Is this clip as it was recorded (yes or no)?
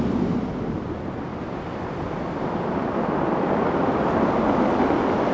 yes